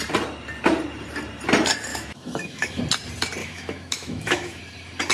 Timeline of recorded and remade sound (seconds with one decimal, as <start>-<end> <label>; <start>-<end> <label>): 0.0-1.9 recorded; 1.9-2.8 remade; 2.8-3.4 recorded; 3.4-4.6 remade; 4.6-5.1 recorded

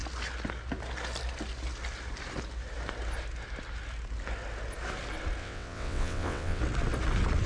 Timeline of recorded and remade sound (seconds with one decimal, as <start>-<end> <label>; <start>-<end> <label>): 0.0-5.4 recorded; 5.4-6.6 remade; 6.6-7.5 recorded

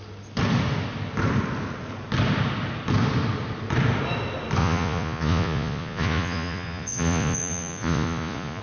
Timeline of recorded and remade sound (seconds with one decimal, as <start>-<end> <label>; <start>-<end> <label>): 0.0-4.6 recorded; 4.6-8.6 remade

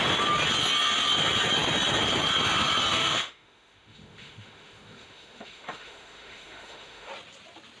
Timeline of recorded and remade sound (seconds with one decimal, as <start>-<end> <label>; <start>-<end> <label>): 0.0-2.9 recorded; 2.9-7.1 remade; 7.1-7.8 recorded

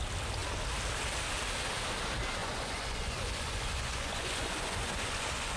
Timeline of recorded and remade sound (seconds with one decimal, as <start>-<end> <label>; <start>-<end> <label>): 0.0-2.4 recorded; 2.4-5.6 remade

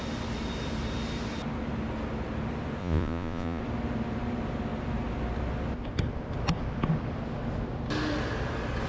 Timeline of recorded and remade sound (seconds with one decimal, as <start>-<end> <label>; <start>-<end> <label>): 0.0-2.8 recorded; 2.8-3.6 remade; 3.6-8.9 recorded

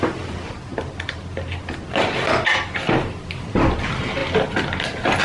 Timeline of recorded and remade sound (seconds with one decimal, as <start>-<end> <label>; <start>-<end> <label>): 0.0-4.2 remade; 4.2-5.2 recorded